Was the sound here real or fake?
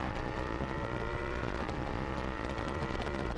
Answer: fake